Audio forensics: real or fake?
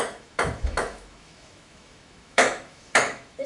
fake